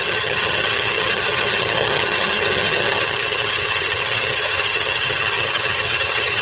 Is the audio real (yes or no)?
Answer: no